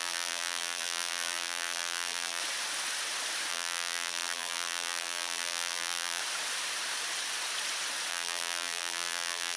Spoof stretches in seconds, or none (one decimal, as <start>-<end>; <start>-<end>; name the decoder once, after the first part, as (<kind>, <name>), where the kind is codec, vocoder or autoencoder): 0.0-2.4 (vocoder, BigVGAN v2); 3.5-6.2; 8.1-9.6